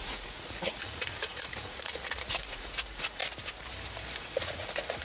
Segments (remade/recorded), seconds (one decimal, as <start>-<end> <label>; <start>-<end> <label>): 0.0-3.2 remade; 3.2-4.2 recorded; 4.2-5.0 remade